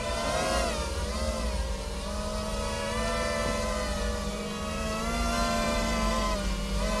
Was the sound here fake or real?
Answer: fake